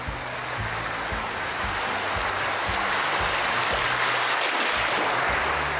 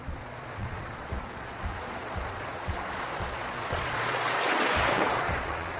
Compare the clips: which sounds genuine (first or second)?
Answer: first